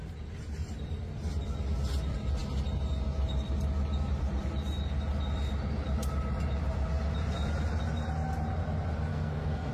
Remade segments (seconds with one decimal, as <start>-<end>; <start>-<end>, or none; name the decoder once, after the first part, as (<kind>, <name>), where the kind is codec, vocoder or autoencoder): 9.1-9.7 (codec, SNAC)